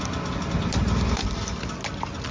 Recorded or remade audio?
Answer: recorded